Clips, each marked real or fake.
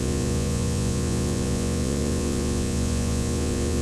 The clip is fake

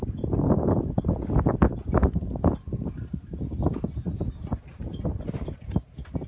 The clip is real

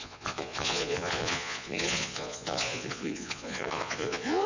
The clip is fake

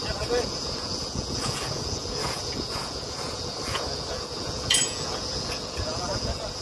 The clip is fake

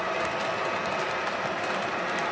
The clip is real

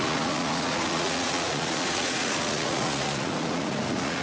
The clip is fake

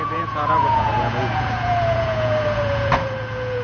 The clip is fake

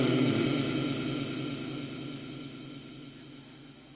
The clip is real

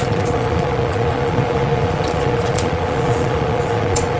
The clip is fake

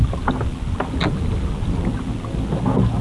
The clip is real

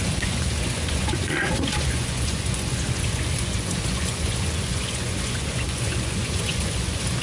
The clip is fake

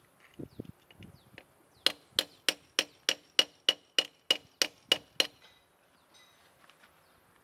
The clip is real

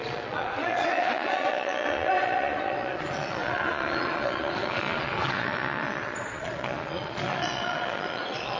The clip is fake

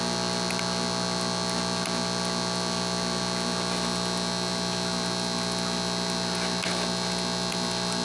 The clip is real